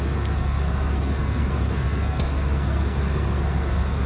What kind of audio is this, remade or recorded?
remade